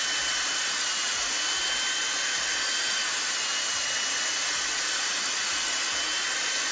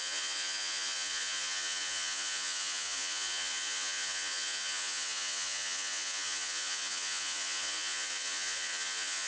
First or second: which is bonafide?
first